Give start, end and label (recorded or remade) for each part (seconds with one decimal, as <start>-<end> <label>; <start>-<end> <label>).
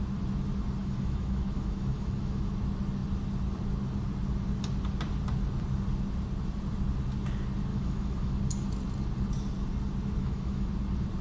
0.0-0.8 recorded; 0.8-2.5 remade; 2.5-7.7 recorded; 7.7-8.4 remade; 8.4-10.2 recorded; 10.2-10.7 remade; 10.7-11.2 recorded